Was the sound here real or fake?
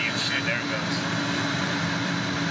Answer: real